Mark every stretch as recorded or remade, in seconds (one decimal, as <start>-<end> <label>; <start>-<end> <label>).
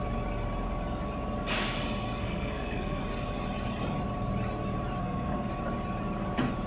0.0-2.2 recorded; 2.2-3.0 remade; 3.0-5.0 recorded; 5.0-5.5 remade; 5.5-6.7 recorded